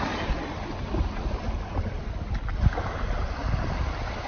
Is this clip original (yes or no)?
yes